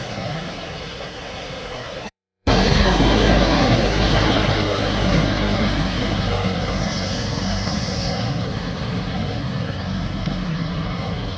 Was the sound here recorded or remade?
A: remade